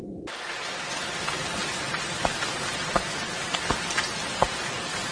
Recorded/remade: recorded